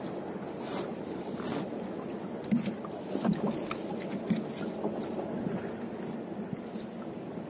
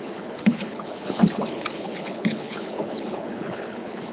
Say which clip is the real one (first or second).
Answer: first